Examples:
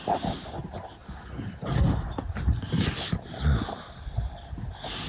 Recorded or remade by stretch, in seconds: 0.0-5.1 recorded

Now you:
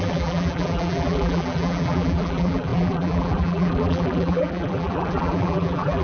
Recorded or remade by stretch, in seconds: 0.0-6.0 remade

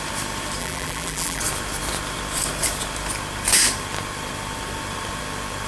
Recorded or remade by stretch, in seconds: 0.0-0.6 recorded; 0.6-1.4 remade; 1.4-5.7 recorded